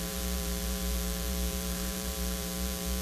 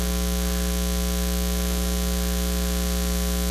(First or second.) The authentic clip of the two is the second